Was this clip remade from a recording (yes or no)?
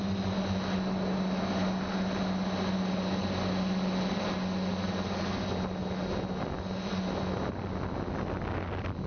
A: no